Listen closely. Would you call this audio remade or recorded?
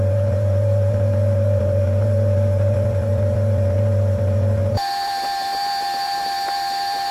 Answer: remade